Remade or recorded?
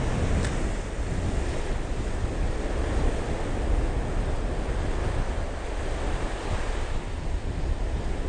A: recorded